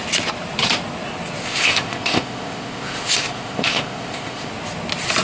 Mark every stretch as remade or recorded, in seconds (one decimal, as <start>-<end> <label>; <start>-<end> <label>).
0.0-1.4 recorded; 1.4-4.5 remade; 4.5-5.2 recorded